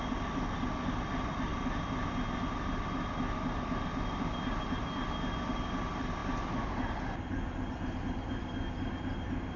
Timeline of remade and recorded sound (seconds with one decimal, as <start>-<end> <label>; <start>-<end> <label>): 0.0-9.6 recorded